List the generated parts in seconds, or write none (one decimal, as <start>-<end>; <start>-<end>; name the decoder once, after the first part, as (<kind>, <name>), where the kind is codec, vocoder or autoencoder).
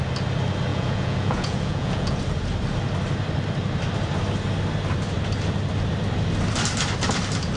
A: 0.7-2.2 (vocoder, Vocos)